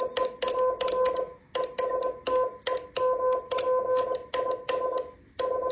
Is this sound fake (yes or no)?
no